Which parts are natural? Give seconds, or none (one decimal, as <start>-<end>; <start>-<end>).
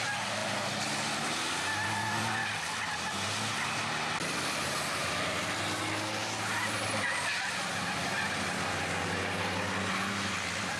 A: 0.0-10.8